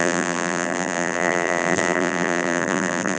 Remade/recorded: remade